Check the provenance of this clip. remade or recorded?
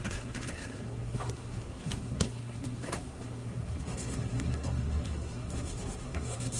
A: remade